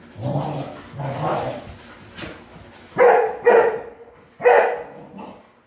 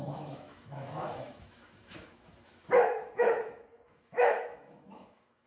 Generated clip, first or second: second